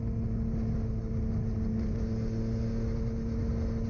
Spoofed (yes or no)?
no